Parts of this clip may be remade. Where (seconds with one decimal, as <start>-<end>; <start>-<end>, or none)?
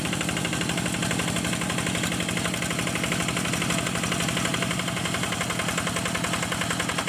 4.5-5.4